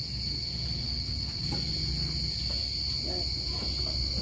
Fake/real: real